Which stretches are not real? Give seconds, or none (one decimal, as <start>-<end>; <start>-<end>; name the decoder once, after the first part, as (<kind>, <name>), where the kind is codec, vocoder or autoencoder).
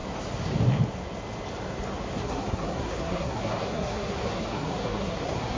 2.2-5.6 (codec, SNAC)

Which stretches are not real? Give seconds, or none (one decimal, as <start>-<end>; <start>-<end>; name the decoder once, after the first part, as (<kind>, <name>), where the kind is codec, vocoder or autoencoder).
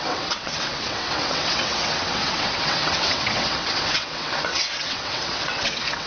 0.0-6.1 (vocoder, WaveNeXt)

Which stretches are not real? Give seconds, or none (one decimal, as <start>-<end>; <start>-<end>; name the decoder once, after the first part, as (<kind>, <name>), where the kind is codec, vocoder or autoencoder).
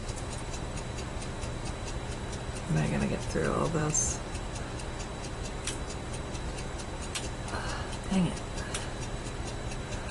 0.0-10.1 (vocoder, BigVGAN v2)